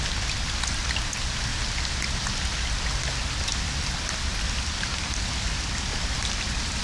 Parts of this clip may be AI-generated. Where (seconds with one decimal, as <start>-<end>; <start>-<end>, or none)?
1.5-2.4; 3.5-5.1; 5.9-6.8